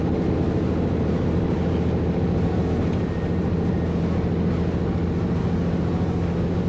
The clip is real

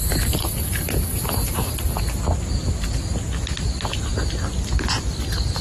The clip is real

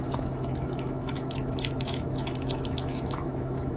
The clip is fake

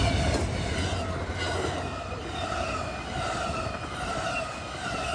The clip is real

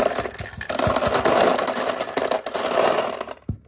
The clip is real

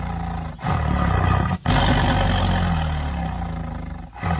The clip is real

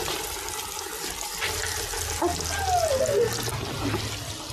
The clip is real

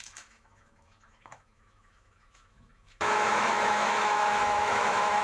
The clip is fake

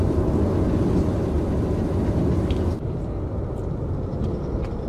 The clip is real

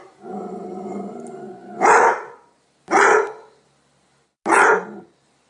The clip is real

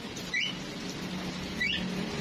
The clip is real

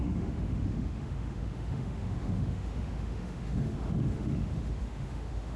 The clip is fake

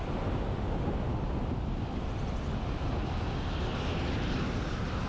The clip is real